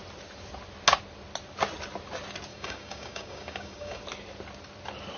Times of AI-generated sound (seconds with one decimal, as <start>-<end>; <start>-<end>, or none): 2.5-4.0